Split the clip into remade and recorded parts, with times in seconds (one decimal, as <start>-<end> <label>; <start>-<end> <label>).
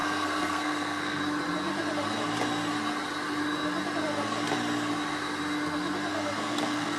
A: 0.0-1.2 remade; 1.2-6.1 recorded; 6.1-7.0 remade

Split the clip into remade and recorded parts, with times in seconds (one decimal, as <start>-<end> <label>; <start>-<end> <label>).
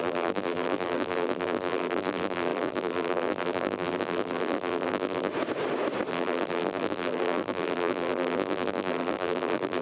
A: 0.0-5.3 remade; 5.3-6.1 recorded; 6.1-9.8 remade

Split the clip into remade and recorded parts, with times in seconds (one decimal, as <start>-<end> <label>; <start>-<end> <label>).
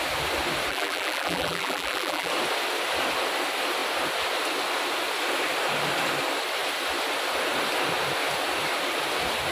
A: 0.0-0.7 recorded; 0.7-2.3 remade; 2.3-9.5 recorded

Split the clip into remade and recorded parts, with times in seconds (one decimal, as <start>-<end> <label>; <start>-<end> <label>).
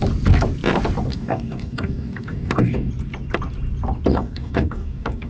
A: 0.0-1.1 recorded; 1.1-2.9 remade; 2.9-4.1 recorded; 4.1-5.3 remade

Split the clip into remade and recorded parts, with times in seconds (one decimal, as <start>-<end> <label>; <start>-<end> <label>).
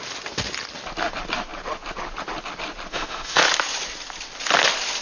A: 0.0-2.9 recorded; 2.9-3.4 remade; 3.4-5.0 recorded